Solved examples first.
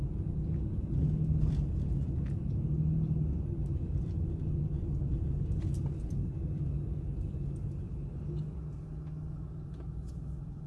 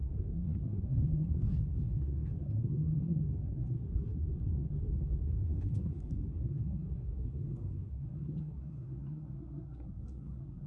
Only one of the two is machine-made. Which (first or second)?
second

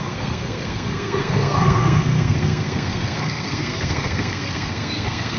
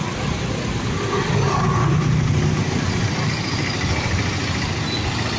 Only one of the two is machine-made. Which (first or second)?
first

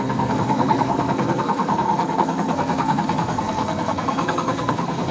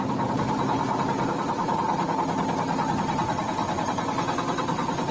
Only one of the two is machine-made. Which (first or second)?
first